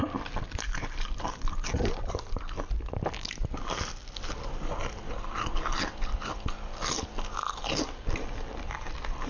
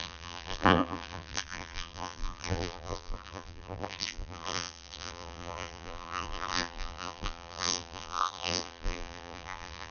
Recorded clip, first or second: first